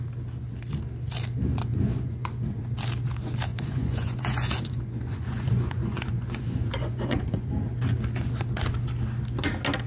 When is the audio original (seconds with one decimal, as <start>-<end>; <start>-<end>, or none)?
0.0-1.7; 2.6-3.5; 7.5-9.9